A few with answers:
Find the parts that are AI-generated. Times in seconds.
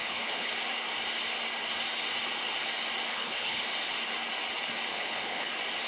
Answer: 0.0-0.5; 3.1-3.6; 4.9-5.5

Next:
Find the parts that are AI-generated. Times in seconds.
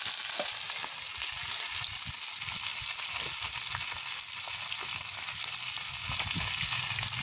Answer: none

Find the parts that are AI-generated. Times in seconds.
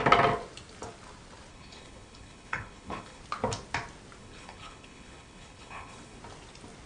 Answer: 1.5-3.2; 4.2-6.2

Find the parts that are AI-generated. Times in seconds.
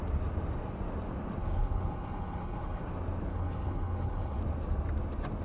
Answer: 1.4-2.8; 3.3-4.4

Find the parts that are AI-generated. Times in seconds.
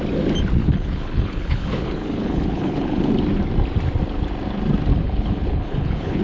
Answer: 0.6-3.1; 4.9-6.2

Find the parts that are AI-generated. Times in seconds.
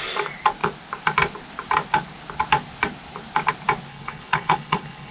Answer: 3.9-5.1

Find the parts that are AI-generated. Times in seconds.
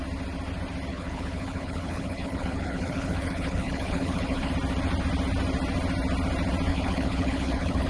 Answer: 0.9-4.5; 6.7-7.9